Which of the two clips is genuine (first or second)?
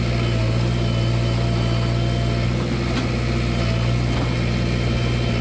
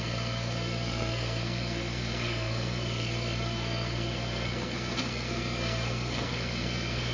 first